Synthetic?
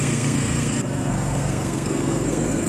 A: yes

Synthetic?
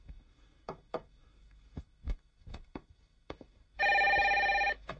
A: yes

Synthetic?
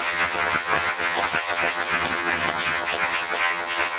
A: yes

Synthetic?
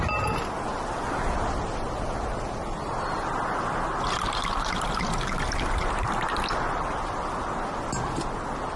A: no